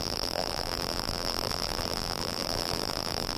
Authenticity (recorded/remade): remade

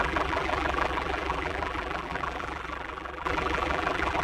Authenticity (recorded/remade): remade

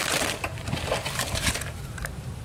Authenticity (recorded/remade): remade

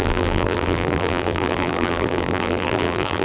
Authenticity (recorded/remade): remade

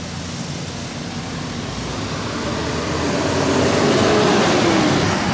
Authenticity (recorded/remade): recorded